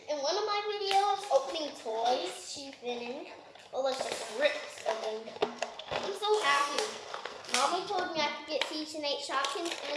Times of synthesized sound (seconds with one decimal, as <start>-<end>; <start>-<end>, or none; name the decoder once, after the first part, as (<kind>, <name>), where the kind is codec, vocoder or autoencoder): 0.7-1.5 (codec, SNAC); 1.9-2.7; 4.8-7.9